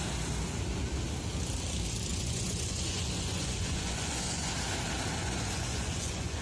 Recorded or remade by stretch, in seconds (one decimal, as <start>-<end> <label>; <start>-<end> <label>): 0.0-2.1 recorded; 2.1-4.5 remade; 4.5-5.2 recorded; 5.2-6.4 remade